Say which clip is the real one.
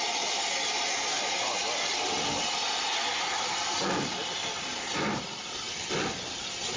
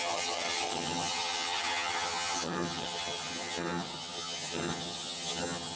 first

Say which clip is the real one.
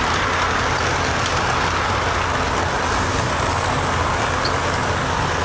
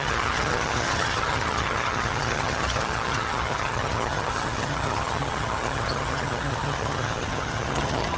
first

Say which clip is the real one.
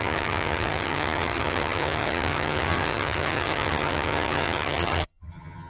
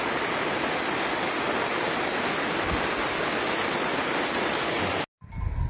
second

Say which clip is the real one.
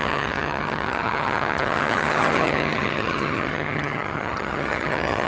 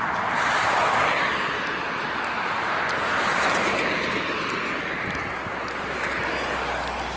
second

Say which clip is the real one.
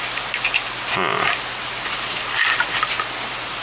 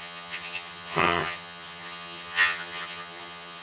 first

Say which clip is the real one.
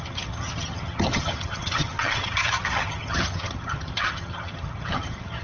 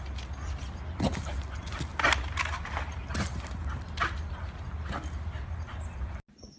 second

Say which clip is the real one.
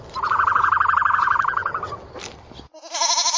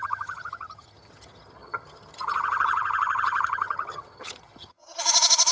first